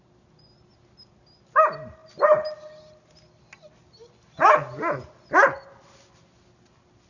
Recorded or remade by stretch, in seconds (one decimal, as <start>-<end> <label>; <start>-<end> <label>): 0.0-7.1 recorded